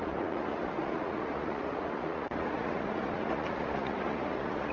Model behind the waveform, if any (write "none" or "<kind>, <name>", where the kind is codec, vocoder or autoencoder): vocoder, Vocos